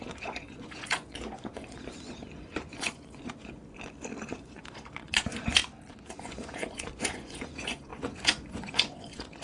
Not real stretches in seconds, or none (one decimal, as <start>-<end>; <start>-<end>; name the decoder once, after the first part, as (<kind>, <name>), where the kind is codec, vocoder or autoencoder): 0.0-3.6 (vocoder, Vocos); 4.3-5.6; 6.2-9.4